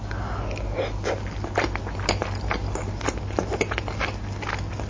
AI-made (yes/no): no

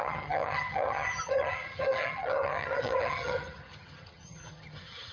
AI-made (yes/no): yes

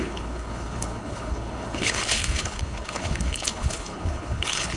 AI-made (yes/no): yes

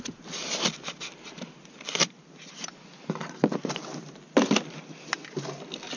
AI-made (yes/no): no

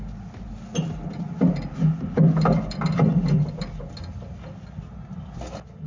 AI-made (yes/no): no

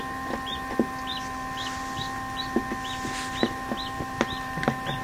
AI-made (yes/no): yes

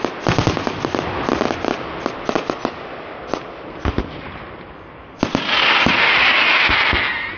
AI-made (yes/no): no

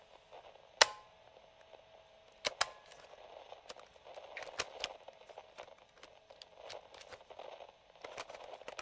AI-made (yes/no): no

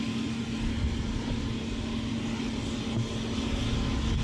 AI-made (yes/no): no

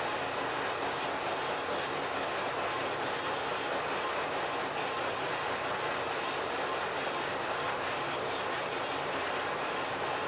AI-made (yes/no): no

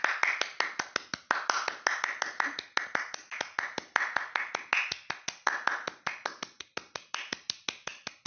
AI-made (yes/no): no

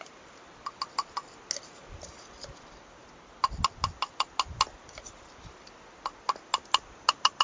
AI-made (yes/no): no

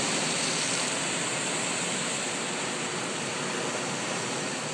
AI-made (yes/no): no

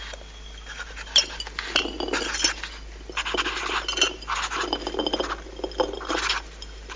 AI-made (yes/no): no